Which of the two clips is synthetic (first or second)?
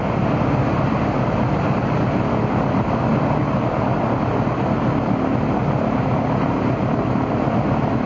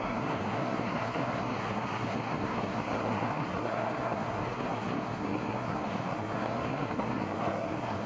second